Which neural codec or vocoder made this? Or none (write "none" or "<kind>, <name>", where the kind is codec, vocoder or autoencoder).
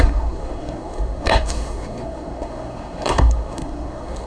codec, SNAC